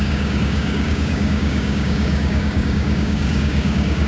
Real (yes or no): no